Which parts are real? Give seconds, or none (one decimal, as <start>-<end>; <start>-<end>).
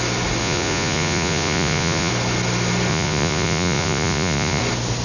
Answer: 0.0-0.4; 2.1-2.9; 4.6-5.0